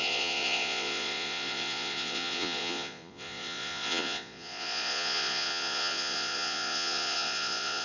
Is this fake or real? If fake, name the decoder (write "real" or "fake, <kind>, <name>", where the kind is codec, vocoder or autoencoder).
fake, vocoder, Vocos